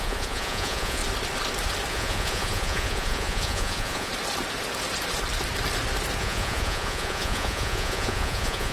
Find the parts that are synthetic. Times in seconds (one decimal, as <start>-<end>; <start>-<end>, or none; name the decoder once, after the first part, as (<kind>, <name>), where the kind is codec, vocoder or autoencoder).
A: 0.0-1.0 (vocoder, Vocos); 1.9-4.1; 6.2-8.7